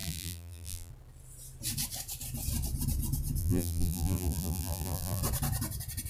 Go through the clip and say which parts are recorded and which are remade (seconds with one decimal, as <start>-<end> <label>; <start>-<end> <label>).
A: 0.0-0.9 remade; 0.9-3.4 recorded; 3.4-5.2 remade; 5.2-6.1 recorded